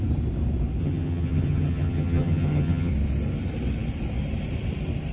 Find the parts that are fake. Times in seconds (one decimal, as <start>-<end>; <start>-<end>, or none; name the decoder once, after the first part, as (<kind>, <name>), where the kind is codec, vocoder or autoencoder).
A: 0.8-2.9 (vocoder, HiFi-GAN)